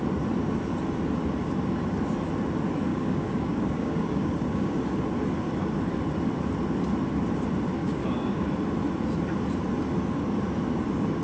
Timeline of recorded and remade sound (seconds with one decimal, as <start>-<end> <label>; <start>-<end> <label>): 0.0-2.9 recorded; 2.9-4.8 remade; 4.8-7.8 recorded; 7.8-8.5 remade; 8.5-11.2 recorded